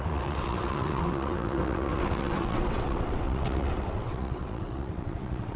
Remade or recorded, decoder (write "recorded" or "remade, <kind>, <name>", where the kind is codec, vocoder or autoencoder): remade, vocoder, WaveNeXt